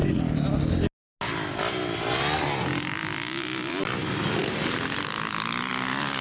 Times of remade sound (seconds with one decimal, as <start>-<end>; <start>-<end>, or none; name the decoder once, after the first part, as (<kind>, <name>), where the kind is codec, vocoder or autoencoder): none